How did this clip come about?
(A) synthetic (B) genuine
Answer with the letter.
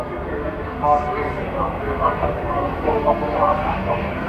A